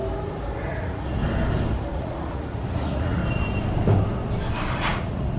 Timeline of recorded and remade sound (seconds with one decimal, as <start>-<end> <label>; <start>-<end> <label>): 0.0-0.7 recorded; 0.7-1.2 remade; 1.2-1.9 recorded; 1.9-3.2 remade; 3.2-4.8 recorded; 4.8-5.4 remade